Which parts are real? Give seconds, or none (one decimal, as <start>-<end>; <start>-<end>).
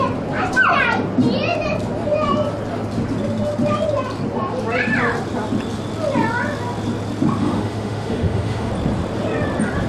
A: 0.0-7.4; 8.7-9.9